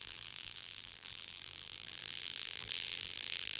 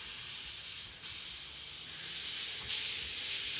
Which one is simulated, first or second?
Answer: first